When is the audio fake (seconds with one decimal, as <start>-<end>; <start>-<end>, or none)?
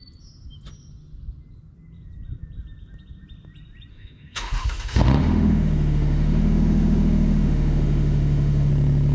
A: 3.9-8.7